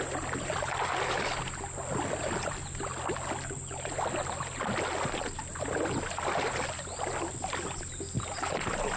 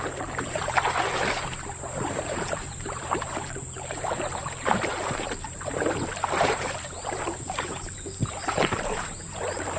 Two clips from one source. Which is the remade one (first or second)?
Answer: second